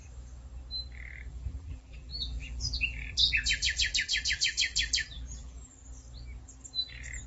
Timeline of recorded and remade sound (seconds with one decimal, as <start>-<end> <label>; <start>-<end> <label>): 0.0-1.3 recorded; 1.3-5.7 remade; 5.7-7.3 recorded